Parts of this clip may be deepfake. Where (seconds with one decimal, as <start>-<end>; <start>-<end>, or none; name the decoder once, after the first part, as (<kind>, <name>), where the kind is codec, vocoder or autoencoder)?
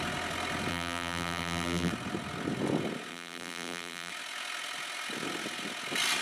0.7-1.9 (vocoder, BigVGAN v2); 3.1-4.1